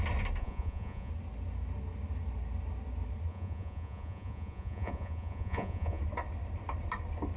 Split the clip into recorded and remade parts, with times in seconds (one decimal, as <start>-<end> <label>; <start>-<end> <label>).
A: 0.0-0.4 recorded; 0.4-1.1 remade; 1.1-3.3 recorded; 3.3-6.0 remade; 6.0-7.4 recorded